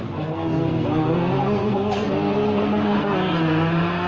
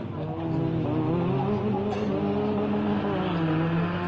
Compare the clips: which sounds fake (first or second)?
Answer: first